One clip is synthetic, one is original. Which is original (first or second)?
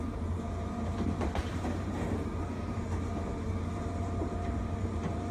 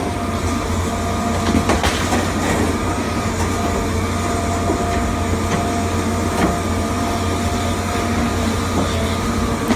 second